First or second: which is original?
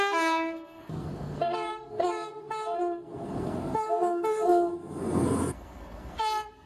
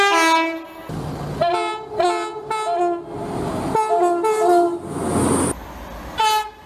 second